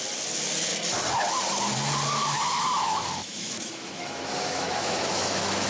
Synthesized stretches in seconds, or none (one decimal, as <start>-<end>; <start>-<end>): 2.2-5.7